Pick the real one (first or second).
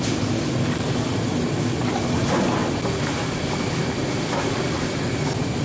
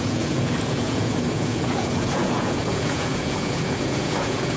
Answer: first